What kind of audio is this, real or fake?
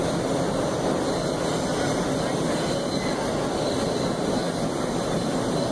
real